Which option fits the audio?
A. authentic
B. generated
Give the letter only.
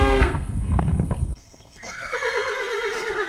B